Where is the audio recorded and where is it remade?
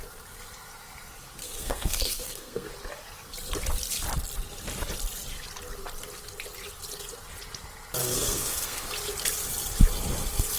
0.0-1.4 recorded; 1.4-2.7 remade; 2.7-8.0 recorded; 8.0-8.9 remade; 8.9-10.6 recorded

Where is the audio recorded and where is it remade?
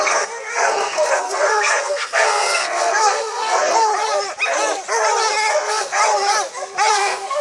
0.0-3.9 remade; 3.9-5.5 recorded; 5.5-6.0 remade; 6.0-6.9 recorded; 6.9-7.4 remade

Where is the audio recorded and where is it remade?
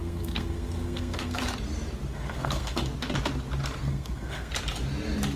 0.0-1.4 remade; 1.4-2.1 recorded; 2.1-2.8 remade; 2.8-3.8 recorded; 3.8-4.5 remade; 4.5-5.4 recorded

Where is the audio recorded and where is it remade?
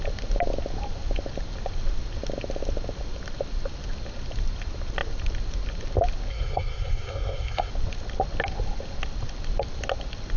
0.0-6.3 recorded; 6.3-7.7 remade; 7.7-10.4 recorded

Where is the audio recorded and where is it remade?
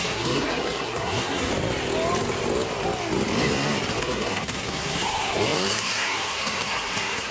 0.0-1.5 remade; 1.5-4.0 recorded; 4.0-7.3 remade